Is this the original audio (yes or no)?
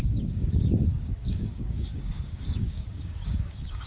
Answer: no